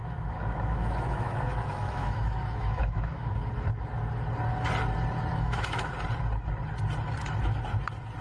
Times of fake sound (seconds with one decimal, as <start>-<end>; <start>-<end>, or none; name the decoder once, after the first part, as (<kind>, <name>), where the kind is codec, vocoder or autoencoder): 0.0-3.3 (autoencoder, DAC-VAE); 5.3-5.9